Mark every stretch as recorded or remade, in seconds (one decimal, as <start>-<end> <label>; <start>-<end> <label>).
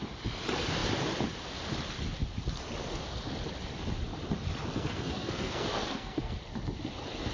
0.0-4.7 recorded; 4.7-6.4 remade; 6.4-7.3 recorded